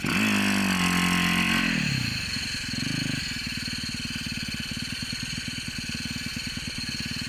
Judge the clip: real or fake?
real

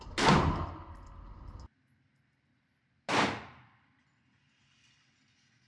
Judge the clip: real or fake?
real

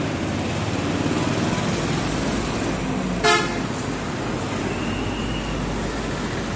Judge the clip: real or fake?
real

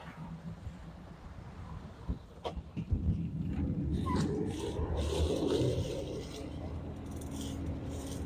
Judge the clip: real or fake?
fake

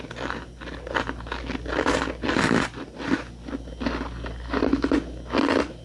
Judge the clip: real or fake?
real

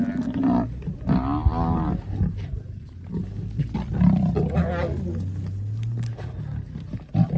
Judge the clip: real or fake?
real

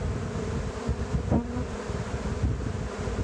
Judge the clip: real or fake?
real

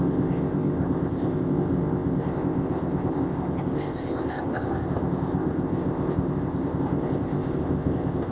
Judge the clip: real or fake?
fake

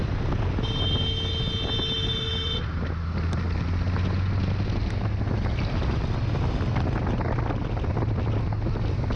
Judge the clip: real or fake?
real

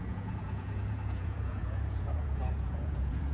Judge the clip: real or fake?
fake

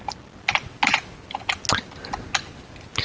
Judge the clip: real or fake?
real